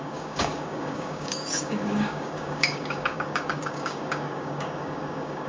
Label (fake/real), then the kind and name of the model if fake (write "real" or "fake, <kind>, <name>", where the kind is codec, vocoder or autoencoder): fake, codec, DAC